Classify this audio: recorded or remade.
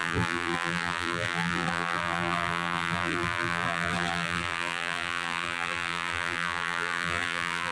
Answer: remade